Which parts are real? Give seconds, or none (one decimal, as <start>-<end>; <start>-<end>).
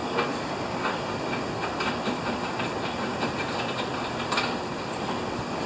0.0-0.9; 3.1-4.2